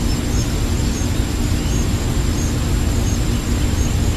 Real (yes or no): yes